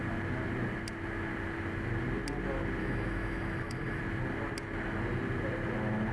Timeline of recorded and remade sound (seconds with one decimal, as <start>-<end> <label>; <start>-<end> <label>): 0.0-2.8 recorded; 2.8-4.0 remade; 4.0-6.1 recorded